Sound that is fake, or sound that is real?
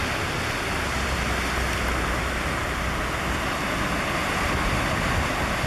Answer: real